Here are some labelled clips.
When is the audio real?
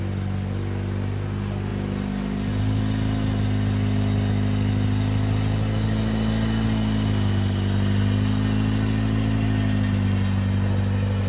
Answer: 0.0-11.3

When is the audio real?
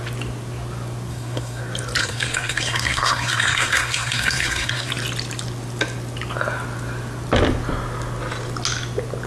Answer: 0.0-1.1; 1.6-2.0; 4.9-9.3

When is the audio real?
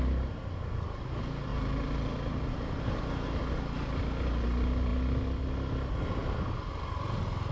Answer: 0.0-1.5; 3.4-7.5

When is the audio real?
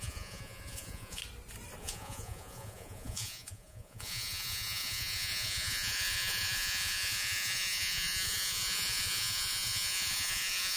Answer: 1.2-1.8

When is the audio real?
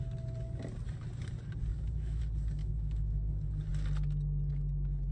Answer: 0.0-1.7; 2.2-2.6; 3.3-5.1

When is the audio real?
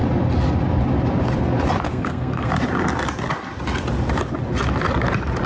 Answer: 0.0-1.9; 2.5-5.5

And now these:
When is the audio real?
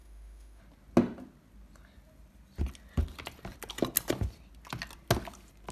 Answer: 0.6-5.7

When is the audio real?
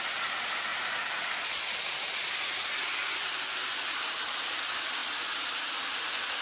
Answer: 0.0-6.4